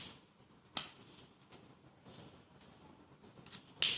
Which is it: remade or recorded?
recorded